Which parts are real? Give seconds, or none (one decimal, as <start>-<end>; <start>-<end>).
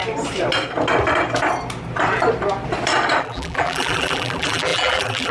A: 0.0-3.2